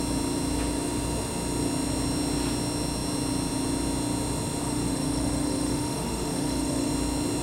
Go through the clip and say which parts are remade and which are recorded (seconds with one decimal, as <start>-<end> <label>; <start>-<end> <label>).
0.0-4.6 recorded; 4.6-6.9 remade; 6.9-7.4 recorded